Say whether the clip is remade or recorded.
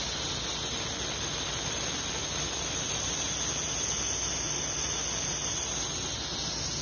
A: recorded